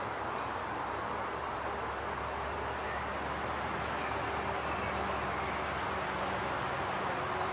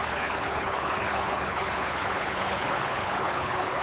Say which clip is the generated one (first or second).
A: second